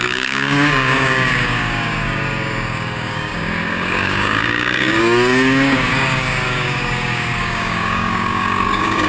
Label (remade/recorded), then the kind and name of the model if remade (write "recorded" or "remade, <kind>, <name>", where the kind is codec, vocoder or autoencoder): remade, codec, DAC